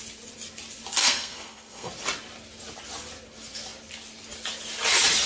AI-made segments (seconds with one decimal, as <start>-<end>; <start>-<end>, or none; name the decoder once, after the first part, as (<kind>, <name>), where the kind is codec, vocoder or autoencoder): 1.0-1.9 (codec, SNAC)